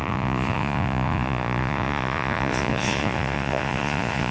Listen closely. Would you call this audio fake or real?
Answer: fake